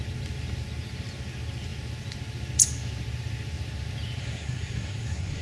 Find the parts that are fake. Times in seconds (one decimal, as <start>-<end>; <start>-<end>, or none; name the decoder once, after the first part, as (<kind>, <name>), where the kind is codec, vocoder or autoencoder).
4.2-5.4 (codec, SNAC)